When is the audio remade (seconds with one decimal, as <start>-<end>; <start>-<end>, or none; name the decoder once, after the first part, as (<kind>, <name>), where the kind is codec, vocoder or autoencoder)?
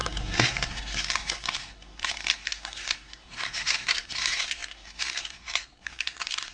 0.0-6.5 (codec, SNAC)